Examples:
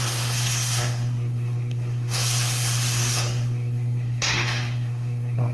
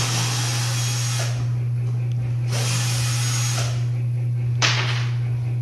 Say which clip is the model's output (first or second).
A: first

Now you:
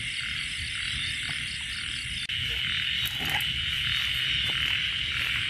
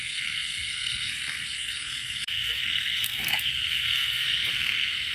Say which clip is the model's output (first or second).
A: second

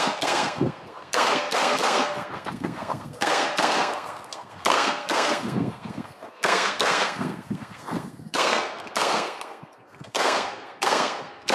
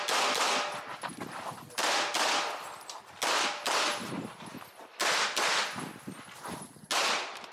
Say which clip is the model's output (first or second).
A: first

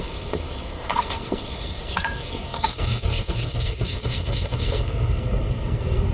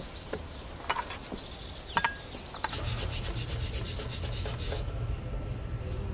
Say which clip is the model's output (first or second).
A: first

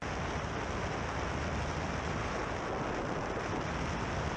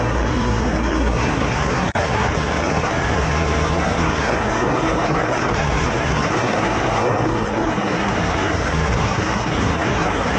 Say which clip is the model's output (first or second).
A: second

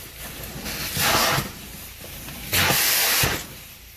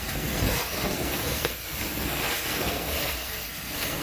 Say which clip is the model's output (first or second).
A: second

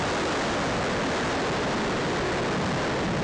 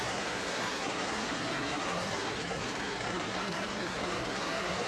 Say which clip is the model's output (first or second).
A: second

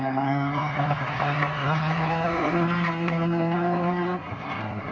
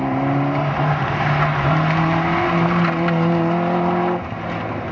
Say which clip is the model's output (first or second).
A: first